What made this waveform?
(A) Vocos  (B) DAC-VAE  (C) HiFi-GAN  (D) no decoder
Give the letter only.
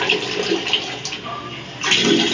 D